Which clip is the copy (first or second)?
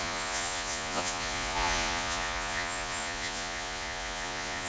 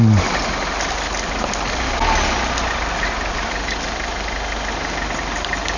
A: first